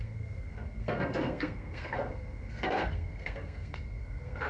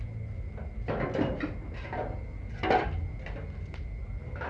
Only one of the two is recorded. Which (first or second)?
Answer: second